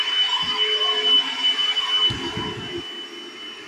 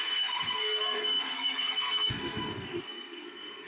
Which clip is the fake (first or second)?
second